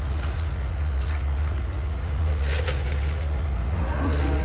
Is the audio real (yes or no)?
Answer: no